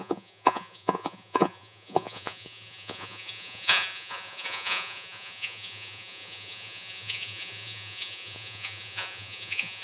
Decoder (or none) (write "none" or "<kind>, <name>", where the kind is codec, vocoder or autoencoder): vocoder, Vocos